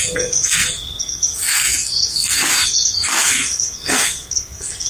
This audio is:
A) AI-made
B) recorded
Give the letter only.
A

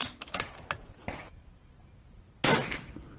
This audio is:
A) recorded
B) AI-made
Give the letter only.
A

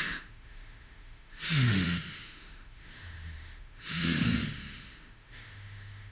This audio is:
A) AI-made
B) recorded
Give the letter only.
A